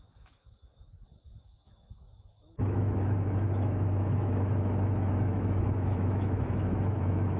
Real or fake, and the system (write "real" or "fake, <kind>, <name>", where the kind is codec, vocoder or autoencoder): fake, autoencoder, DAC-VAE